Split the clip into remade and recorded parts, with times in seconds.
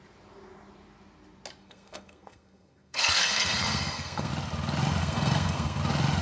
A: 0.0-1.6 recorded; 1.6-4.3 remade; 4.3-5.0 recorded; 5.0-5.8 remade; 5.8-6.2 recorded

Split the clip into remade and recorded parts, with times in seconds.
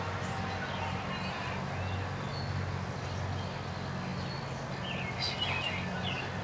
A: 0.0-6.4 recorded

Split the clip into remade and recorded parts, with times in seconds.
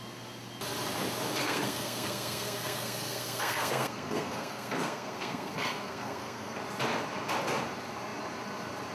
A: 0.0-1.4 recorded; 1.4-6.6 remade; 6.6-8.9 recorded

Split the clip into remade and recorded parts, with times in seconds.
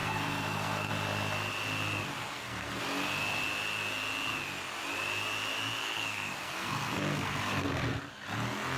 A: 0.0-0.9 remade; 0.9-2.2 recorded; 2.2-2.8 remade; 2.8-5.8 recorded; 5.8-8.1 remade; 8.1-8.8 recorded